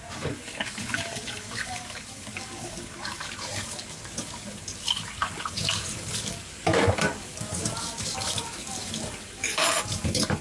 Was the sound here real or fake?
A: fake